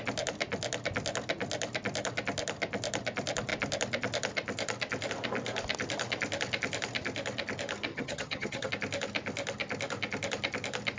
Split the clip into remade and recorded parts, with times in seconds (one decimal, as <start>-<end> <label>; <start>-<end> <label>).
0.0-7.9 recorded; 7.9-8.7 remade; 8.7-11.0 recorded